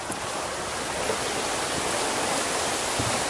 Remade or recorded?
recorded